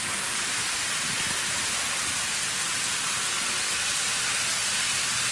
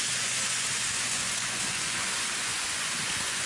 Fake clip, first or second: second